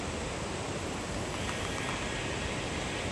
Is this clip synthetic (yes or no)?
no